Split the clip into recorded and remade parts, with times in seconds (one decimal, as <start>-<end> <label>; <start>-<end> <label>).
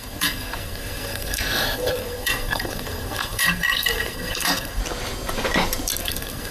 0.0-4.8 remade; 4.8-6.0 recorded; 6.0-6.5 remade